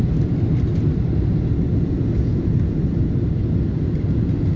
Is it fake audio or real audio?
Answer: real